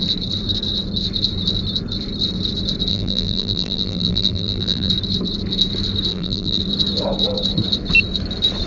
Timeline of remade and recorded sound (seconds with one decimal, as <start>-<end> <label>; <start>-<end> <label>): 0.0-2.9 recorded; 2.9-4.9 remade; 4.9-6.1 recorded; 6.1-6.6 remade; 6.6-8.7 recorded